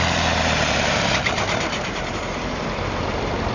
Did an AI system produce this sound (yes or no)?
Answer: yes